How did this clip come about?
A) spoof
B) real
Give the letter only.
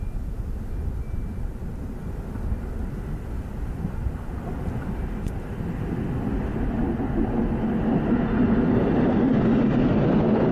B